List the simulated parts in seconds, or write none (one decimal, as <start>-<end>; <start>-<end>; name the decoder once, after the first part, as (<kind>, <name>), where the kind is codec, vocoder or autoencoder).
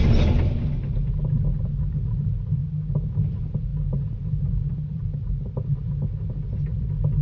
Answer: none